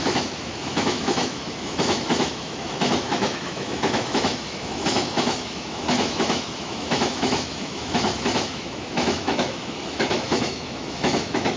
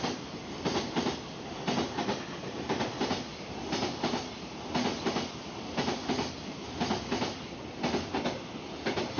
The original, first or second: second